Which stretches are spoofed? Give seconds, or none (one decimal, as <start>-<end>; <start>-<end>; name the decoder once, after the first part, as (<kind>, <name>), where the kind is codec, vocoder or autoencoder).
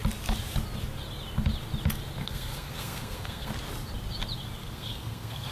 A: 2.2-3.5 (codec, SNAC); 4.6-5.5